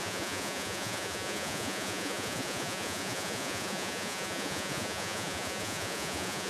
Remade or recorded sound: remade